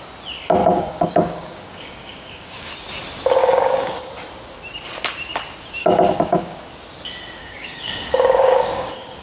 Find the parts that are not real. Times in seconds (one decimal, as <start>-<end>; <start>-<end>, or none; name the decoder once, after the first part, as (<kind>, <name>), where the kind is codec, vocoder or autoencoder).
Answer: 0.6-2.7 (codec, DAC); 3.4-4.1; 5.8-6.6; 7.4-9.2